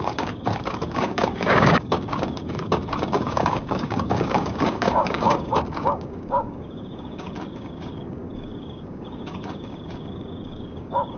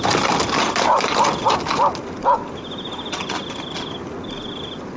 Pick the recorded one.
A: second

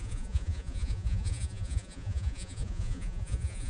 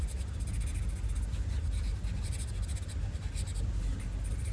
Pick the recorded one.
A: second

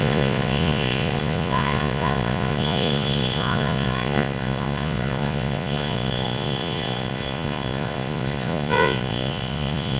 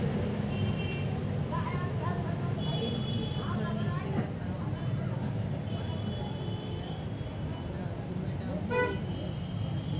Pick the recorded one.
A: second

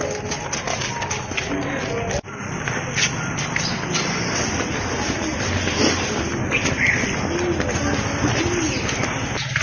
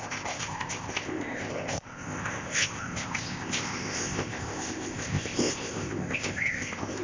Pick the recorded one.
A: first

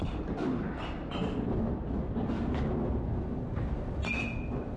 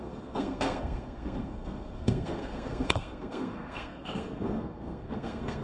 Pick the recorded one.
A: first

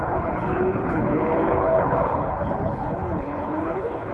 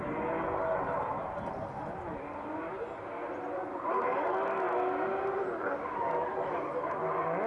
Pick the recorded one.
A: second